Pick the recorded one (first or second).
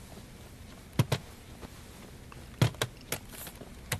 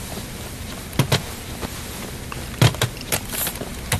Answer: first